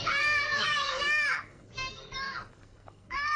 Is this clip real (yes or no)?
no